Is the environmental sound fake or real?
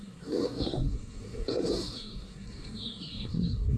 fake